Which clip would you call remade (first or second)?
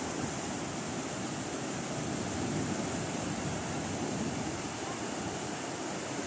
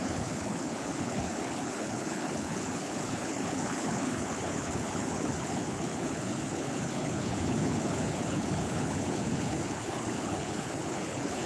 second